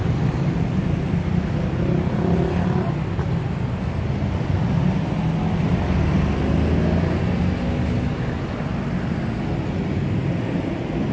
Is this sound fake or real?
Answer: real